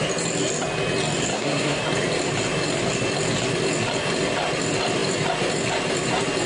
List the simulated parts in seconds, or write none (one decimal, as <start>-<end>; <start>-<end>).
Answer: 1.3-1.8